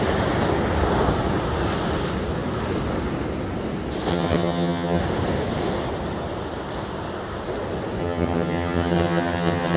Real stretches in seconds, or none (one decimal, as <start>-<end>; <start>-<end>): 0.0-4.1; 5.0-8.0